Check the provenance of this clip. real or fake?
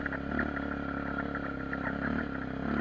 real